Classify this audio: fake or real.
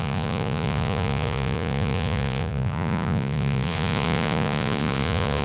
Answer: fake